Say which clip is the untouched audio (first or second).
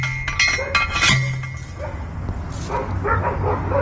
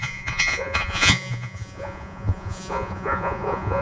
first